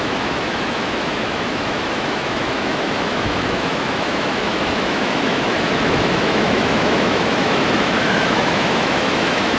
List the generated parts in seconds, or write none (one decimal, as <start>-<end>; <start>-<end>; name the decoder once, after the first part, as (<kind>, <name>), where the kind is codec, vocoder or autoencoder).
0.0-9.6 (autoencoder, DAC-VAE)

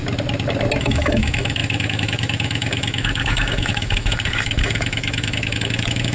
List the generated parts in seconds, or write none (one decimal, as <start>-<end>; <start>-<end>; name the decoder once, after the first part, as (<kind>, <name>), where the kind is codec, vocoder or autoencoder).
0.8-6.1 (autoencoder, DAC-VAE)